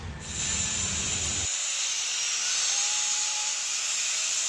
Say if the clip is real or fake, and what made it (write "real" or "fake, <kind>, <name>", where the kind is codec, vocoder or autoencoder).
real